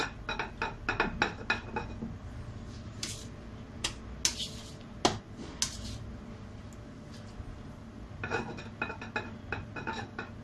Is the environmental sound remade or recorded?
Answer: recorded